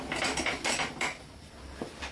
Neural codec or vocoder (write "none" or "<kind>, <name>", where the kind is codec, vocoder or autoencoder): none